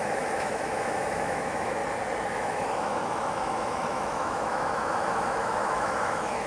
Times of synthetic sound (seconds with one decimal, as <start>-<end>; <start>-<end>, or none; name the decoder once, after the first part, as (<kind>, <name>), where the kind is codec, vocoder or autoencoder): 0.0-1.8 (autoencoder, DAC-VAE); 2.3-6.5